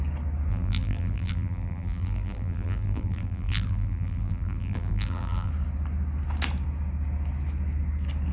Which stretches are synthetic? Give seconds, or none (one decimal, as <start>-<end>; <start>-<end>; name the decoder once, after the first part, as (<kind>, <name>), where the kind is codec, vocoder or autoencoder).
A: 0.5-5.5 (vocoder, BigVGAN v2)